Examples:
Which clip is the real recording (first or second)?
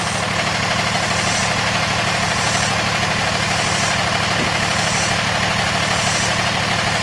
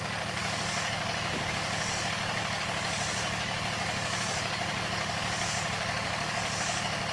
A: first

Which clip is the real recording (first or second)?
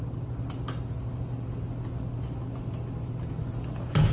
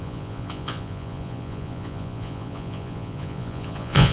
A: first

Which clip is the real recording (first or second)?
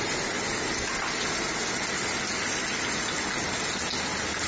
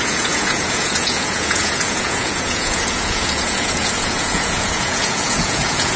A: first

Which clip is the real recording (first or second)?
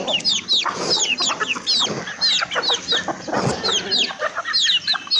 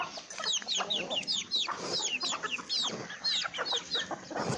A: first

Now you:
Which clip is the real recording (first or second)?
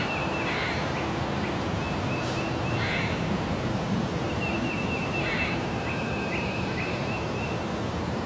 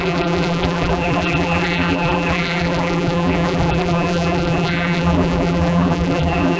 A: first